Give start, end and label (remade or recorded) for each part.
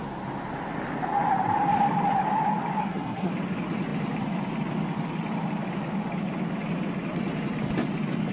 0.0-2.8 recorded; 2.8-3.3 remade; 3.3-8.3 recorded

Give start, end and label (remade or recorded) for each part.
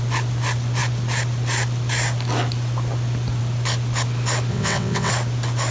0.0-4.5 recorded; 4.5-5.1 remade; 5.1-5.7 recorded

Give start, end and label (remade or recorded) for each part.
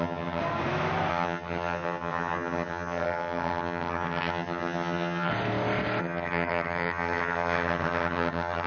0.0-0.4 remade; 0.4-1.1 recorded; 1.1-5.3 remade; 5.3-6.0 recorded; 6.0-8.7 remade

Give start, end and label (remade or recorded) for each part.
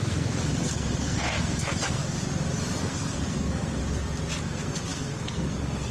0.0-2.0 remade; 2.0-2.8 recorded; 2.8-3.8 remade; 3.8-4.4 recorded; 4.4-5.9 remade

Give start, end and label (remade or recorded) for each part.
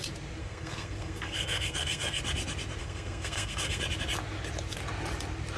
0.0-0.4 recorded; 0.4-2.2 remade; 2.2-2.8 recorded; 2.8-3.8 remade; 3.8-5.6 recorded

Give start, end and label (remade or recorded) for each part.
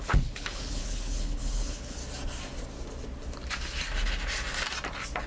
0.0-2.0 remade; 2.0-5.3 recorded